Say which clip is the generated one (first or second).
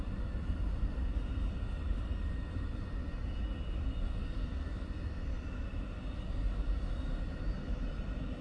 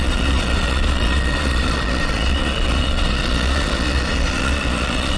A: second